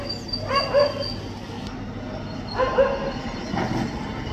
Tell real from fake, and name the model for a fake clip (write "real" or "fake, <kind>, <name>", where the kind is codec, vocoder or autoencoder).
real